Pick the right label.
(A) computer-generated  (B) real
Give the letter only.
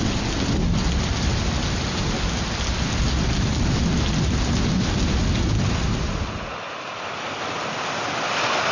B